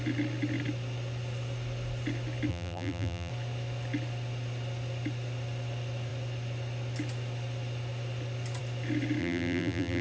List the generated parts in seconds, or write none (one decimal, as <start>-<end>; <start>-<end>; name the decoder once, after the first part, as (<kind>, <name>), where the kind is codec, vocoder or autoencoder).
2.5-3.3 (vocoder, BigVGAN v2); 9.2-10.0